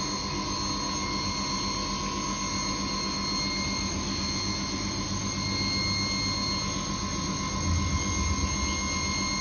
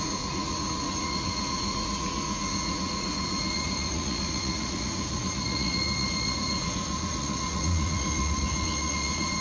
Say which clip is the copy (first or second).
second